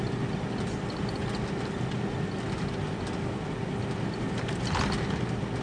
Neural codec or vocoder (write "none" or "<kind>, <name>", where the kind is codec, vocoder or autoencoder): none